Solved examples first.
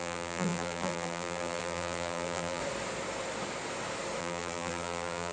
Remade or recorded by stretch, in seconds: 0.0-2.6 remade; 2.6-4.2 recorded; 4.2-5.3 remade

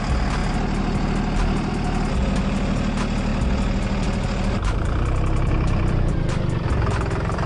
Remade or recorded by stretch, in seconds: 0.0-3.3 recorded; 3.3-7.5 remade